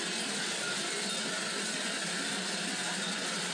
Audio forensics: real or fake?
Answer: fake